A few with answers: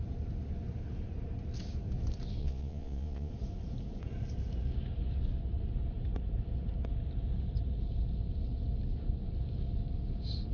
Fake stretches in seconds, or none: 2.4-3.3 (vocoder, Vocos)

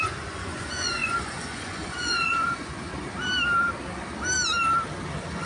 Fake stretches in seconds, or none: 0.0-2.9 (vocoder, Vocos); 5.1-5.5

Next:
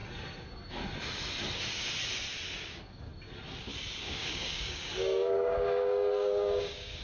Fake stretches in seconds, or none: 2.7-3.1 (codec, DAC); 4.0-7.0

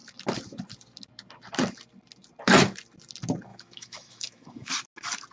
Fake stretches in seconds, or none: 3.5-4.7 (autoencoder, DAC-VAE)

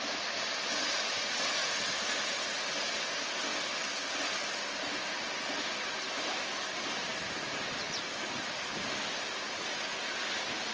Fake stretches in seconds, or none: none

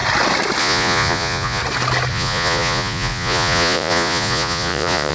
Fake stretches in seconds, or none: 0.6-1.6 (vocoder, Vocos); 2.1-5.1